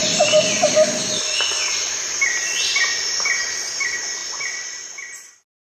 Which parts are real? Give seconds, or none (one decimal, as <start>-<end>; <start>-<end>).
1.1-4.2; 5.3-5.7